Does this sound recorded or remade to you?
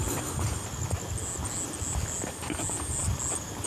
recorded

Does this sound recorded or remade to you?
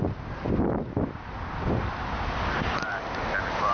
recorded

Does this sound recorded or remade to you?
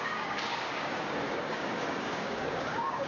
remade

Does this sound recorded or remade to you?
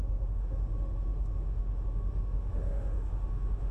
remade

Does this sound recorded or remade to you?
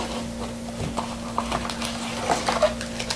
recorded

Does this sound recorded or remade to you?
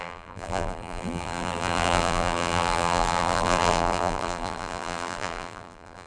remade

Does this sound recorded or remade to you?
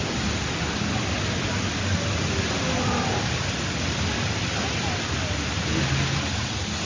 recorded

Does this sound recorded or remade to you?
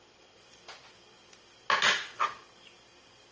recorded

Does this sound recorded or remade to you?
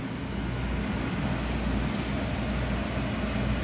recorded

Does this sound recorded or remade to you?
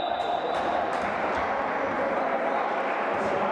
recorded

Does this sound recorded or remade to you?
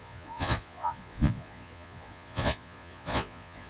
remade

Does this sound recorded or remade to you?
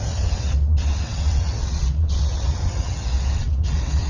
remade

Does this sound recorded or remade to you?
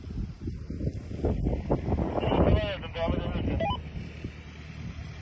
recorded